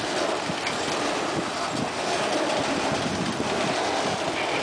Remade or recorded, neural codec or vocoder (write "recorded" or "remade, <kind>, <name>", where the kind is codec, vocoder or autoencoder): recorded